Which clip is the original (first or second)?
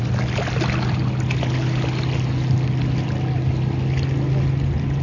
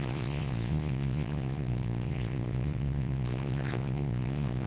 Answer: first